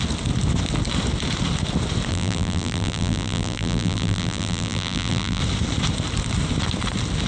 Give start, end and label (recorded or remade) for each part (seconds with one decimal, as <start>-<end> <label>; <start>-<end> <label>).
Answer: 0.0-2.1 recorded; 2.1-5.4 remade; 5.4-7.3 recorded